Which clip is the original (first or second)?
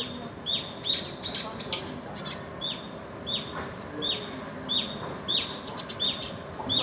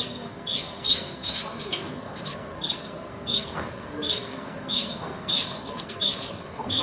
first